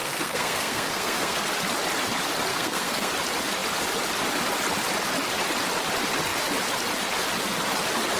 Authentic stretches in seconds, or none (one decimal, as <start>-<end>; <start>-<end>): 1.4-2.5; 3.1-8.2